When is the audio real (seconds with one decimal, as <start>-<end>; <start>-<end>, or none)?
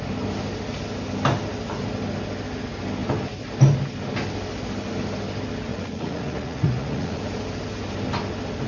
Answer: 0.0-5.7; 7.2-8.7